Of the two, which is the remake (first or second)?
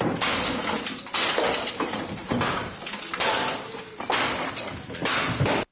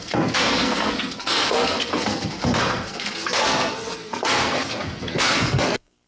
second